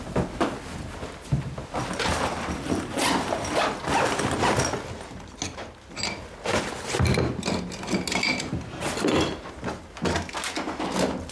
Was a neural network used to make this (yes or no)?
no